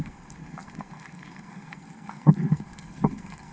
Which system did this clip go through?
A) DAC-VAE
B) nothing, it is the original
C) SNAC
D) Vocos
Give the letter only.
C